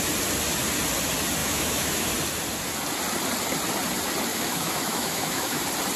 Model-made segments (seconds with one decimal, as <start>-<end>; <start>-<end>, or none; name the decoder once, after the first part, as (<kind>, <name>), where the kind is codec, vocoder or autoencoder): 1.4-2.1 (autoencoder, DAC-VAE); 4.3-5.6

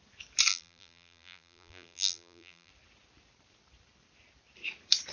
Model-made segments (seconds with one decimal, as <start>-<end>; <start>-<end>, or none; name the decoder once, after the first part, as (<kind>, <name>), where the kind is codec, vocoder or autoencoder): 0.5-2.7 (vocoder, BigVGAN v2)

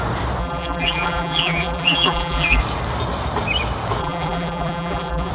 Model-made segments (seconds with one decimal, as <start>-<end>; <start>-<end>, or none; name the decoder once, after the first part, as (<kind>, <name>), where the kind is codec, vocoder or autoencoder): 0.4-2.6 (vocoder, BigVGAN v2); 4.0-5.3

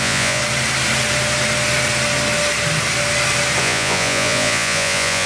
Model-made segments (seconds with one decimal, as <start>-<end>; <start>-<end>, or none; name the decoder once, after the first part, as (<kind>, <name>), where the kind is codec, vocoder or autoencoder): 0.0-0.4 (vocoder, Vocos); 3.6-5.3